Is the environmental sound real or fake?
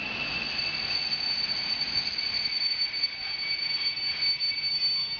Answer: real